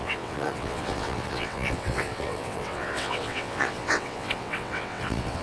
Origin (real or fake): fake